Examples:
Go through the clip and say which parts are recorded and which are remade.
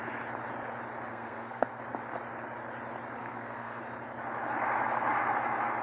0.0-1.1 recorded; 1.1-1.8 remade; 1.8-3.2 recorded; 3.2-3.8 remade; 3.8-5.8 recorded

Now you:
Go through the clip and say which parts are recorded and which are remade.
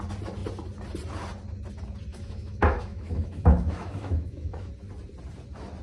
0.0-2.1 recorded; 2.1-4.7 remade; 4.7-5.8 recorded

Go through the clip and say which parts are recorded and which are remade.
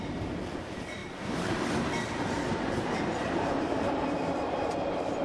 0.0-5.2 remade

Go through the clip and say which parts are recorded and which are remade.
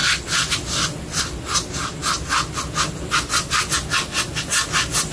0.0-5.1 recorded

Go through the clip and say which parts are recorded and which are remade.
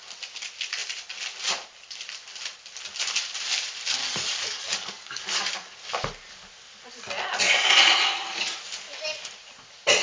0.0-4.0 recorded; 4.0-5.7 remade; 5.7-10.0 recorded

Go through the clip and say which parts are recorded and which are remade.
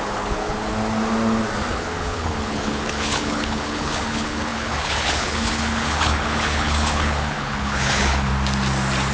0.0-0.7 remade; 0.7-1.7 recorded; 1.7-8.3 remade; 8.3-9.1 recorded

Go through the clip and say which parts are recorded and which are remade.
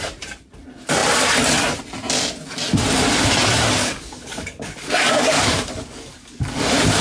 0.0-3.8 recorded; 3.8-6.6 remade; 6.6-7.0 recorded